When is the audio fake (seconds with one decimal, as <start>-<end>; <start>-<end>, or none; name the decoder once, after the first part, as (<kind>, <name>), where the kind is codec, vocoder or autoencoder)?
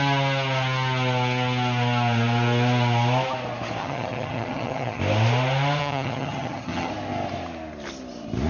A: 3.8-5.0 (vocoder, HiFi-GAN); 5.8-6.9